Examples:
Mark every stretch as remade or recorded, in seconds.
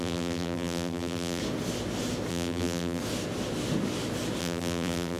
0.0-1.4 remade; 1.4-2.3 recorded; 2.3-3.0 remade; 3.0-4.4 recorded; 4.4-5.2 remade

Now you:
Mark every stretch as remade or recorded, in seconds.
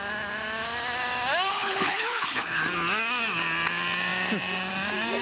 0.0-1.5 recorded; 1.5-2.6 remade; 2.6-5.2 recorded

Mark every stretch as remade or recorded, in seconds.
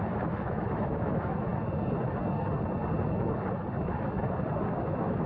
0.0-1.5 remade; 1.5-4.7 recorded; 4.7-5.3 remade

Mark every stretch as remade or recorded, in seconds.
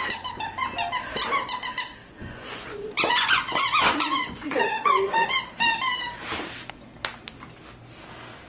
0.0-2.0 recorded; 2.0-5.4 remade; 5.4-8.5 recorded